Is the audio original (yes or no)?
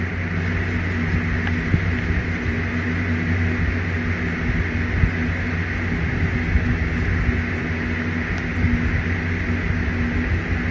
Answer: yes